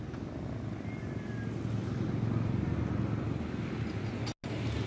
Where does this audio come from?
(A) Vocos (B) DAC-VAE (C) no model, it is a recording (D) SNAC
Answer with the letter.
C